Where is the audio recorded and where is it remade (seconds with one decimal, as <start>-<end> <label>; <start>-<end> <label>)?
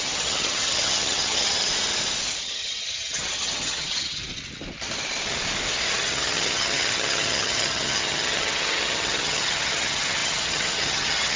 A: 0.0-1.7 remade; 1.7-2.4 recorded; 2.4-4.2 remade; 4.2-5.9 recorded; 5.9-11.4 remade